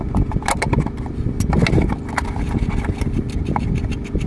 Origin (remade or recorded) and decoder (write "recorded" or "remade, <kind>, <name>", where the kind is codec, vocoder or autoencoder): recorded